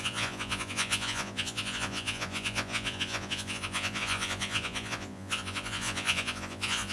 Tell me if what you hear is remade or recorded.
remade